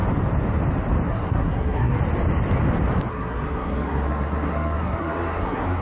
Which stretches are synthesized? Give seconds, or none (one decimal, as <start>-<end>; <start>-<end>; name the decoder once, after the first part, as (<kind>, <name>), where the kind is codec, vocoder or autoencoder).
1.1-2.0 (codec, SNAC); 3.1-5.8